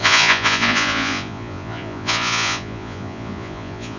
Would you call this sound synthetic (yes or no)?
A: yes